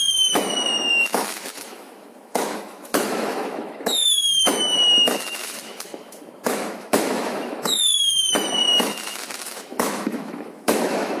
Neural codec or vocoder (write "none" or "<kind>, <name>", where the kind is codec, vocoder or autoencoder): autoencoder, DAC-VAE